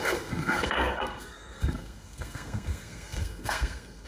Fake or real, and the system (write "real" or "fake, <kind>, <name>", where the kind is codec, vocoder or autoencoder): fake, codec, SNAC